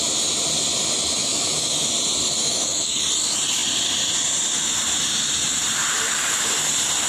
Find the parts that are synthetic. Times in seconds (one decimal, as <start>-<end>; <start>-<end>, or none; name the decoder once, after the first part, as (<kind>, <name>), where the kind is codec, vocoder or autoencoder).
1.2-1.9 (autoencoder, DAC-VAE); 2.4-3.0